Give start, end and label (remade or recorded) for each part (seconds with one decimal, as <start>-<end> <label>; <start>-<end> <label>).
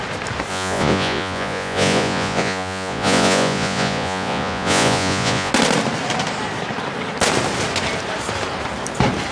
0.0-0.5 recorded; 0.5-5.5 remade; 5.5-9.3 recorded